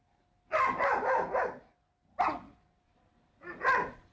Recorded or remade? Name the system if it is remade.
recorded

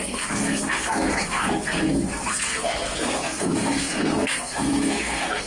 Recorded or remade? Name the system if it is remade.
remade, codec, SNAC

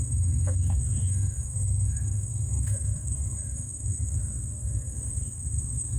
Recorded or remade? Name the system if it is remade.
remade, codec, SNAC